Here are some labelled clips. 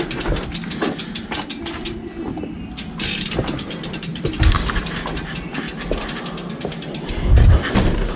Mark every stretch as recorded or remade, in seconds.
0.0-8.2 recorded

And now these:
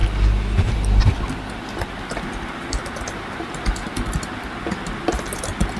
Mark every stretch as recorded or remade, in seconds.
0.0-5.8 recorded

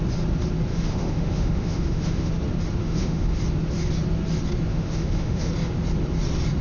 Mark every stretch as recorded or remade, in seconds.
0.0-0.7 recorded; 0.7-2.3 remade; 2.3-2.8 recorded; 2.8-3.4 remade; 3.4-4.7 recorded; 4.7-5.5 remade; 5.5-6.6 recorded

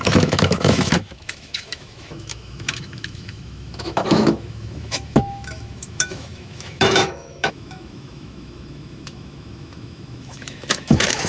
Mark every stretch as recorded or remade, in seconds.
0.0-11.3 remade

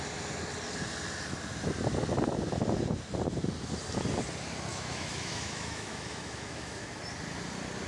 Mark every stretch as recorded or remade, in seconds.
0.0-4.7 recorded; 4.7-7.0 remade; 7.0-7.9 recorded

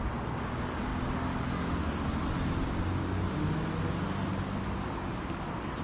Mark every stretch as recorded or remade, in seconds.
0.0-5.8 recorded

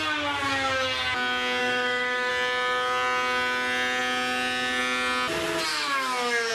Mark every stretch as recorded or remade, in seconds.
0.0-1.6 recorded; 1.6-2.3 remade; 2.3-5.7 recorded; 5.7-6.5 remade

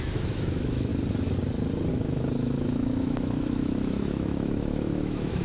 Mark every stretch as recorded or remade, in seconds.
0.0-0.9 remade; 0.9-1.9 recorded; 1.9-5.4 remade